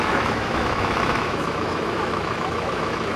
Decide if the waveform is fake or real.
fake